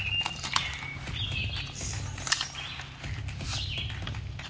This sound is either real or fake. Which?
real